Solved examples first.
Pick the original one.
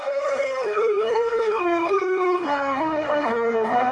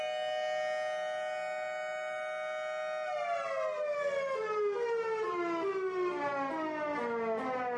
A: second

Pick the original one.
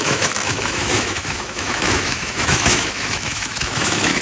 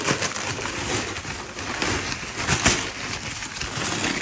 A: second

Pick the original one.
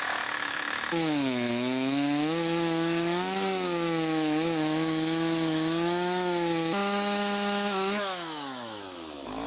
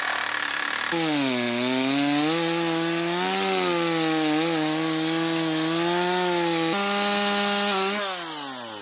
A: second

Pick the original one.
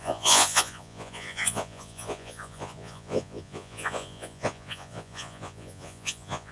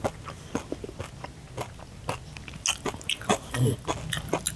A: second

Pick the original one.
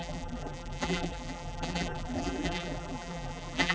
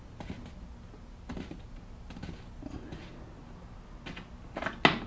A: second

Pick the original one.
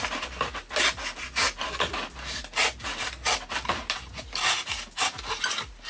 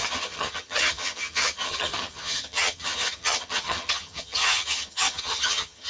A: first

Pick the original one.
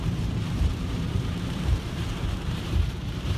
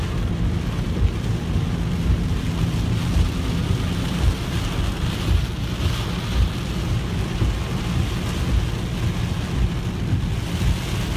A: second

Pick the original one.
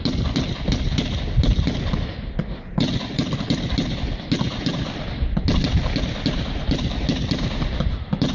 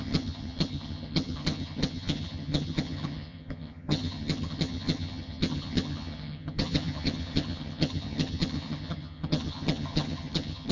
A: first